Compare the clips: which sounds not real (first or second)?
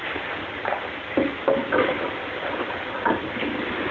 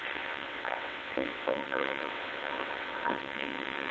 second